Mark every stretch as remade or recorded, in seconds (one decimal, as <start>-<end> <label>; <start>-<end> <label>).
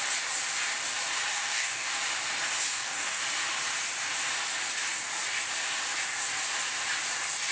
0.0-1.3 recorded; 1.3-2.0 remade; 2.0-2.7 recorded; 2.7-3.2 remade; 3.2-7.5 recorded